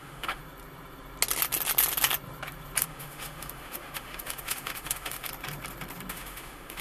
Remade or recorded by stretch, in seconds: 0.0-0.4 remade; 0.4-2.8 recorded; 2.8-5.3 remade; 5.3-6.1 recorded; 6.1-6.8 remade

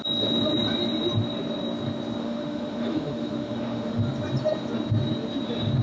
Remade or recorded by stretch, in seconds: 0.0-2.2 recorded; 2.2-4.0 remade; 4.0-5.8 recorded